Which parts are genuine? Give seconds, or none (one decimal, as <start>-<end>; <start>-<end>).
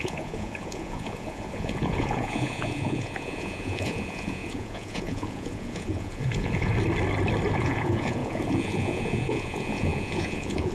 6.7-7.5